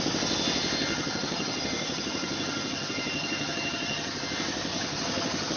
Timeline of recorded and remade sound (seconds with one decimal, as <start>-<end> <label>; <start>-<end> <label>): 0.0-0.8 recorded; 0.8-4.2 remade; 4.2-4.7 recorded; 4.7-5.6 remade